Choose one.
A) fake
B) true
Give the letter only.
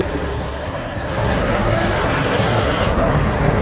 A